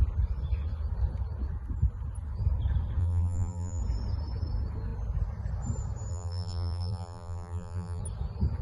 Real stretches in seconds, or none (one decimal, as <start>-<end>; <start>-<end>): 0.0-3.0; 3.8-6.1; 8.0-8.6